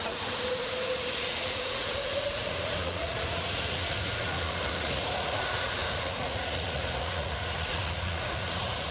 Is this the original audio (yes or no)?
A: no